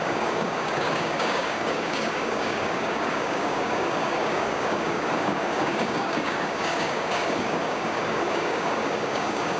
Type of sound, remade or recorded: remade